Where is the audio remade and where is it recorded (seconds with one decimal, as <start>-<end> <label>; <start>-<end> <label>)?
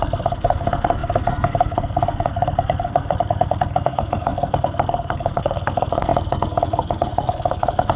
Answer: 0.0-8.0 remade